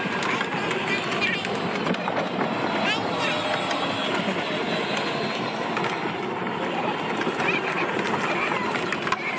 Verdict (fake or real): real